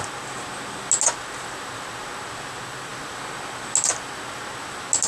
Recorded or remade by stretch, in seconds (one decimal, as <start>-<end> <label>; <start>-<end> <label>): 0.0-5.1 recorded